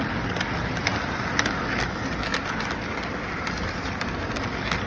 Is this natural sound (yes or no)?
yes